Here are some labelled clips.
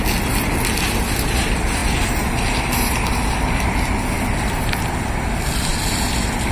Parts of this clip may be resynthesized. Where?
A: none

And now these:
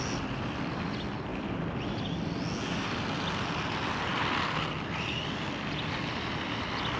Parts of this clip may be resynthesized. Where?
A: none

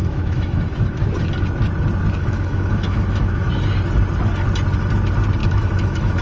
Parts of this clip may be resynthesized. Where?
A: 0.0-1.0; 2.2-3.5; 5.4-6.2

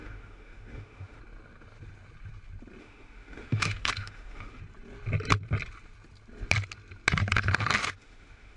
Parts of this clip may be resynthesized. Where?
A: 0.0-1.2; 2.8-4.6; 7.8-8.6

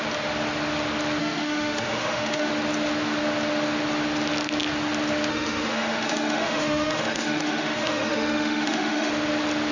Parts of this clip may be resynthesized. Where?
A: 1.2-2.5; 5.3-9.1

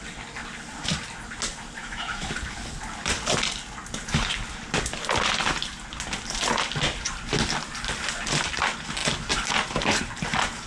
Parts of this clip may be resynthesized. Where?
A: 1.8-2.3